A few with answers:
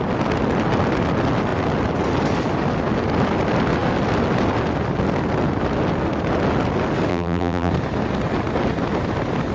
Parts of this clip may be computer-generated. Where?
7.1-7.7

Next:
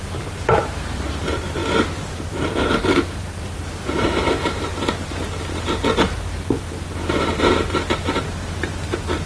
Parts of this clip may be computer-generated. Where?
0.0-1.6; 2.2-4.2; 5.9-9.3

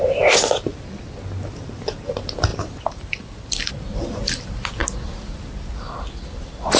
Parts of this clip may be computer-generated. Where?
2.5-3.7

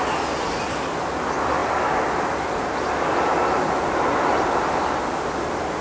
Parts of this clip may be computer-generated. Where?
none

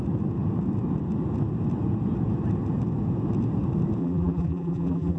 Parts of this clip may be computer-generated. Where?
4.0-5.2

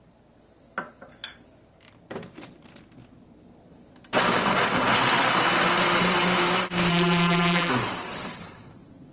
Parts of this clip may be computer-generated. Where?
6.9-7.7